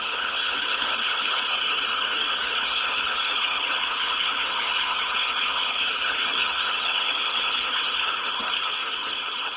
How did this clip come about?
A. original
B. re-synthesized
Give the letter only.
B